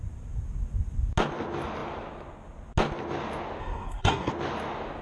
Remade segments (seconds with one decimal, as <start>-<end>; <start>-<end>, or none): 3.6-4.3